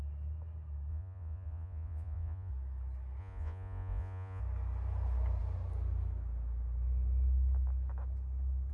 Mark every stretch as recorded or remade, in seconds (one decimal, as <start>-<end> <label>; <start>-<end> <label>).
0.0-0.9 recorded; 0.9-2.5 remade; 2.5-3.2 recorded; 3.2-4.4 remade; 4.4-8.7 recorded